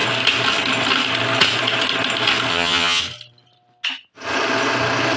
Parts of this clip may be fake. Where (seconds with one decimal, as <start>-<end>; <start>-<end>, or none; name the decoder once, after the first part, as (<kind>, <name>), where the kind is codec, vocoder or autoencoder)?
2.5-3.0 (vocoder, HiFi-GAN)